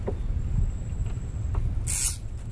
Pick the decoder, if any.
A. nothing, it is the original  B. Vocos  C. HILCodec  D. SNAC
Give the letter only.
A